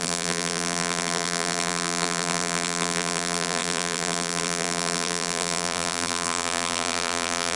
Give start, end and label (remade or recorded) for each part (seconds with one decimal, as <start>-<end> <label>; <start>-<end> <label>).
0.0-7.6 remade

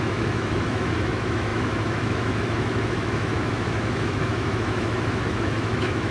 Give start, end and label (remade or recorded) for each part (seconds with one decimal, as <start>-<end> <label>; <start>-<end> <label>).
0.0-6.1 remade

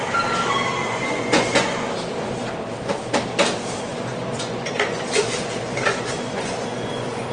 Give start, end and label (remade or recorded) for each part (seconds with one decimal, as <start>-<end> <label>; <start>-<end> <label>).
0.0-0.8 recorded; 0.8-1.9 remade; 1.9-3.9 recorded; 3.9-7.3 remade

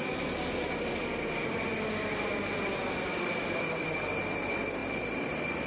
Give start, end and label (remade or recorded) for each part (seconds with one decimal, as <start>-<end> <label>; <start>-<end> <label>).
0.0-5.7 recorded

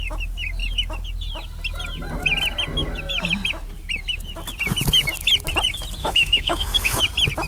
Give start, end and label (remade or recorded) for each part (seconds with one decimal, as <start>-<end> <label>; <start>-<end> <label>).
0.0-6.0 recorded; 6.0-7.0 remade; 7.0-7.5 recorded

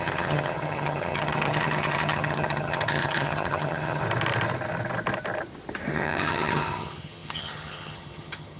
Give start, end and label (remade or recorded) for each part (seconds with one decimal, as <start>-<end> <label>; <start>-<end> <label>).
0.0-4.0 remade; 4.0-5.9 recorded; 5.9-8.6 remade